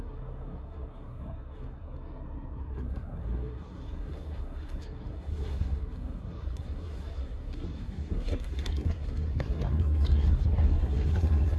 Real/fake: fake